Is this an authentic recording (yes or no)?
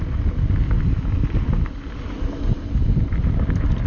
yes